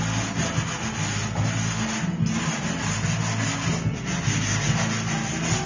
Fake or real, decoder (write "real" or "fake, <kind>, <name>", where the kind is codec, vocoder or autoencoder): real